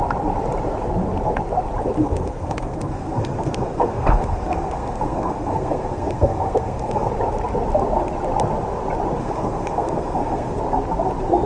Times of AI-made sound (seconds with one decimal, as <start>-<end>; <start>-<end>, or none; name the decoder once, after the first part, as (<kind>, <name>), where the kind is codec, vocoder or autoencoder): 2.0-7.1 (codec, SNAC); 9.2-10.6